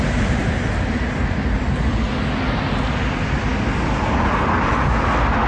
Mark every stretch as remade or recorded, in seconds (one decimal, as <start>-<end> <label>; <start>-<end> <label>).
0.0-5.5 recorded